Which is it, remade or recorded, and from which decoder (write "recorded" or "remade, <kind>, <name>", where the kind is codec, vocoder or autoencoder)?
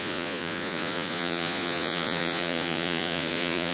remade, vocoder, Vocos